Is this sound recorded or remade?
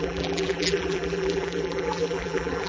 remade